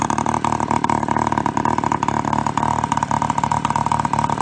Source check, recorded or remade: recorded